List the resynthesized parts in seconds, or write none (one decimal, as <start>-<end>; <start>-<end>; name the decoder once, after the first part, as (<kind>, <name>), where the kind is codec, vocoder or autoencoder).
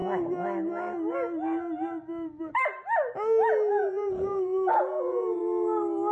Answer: 3.7-5.4 (vocoder, Vocos)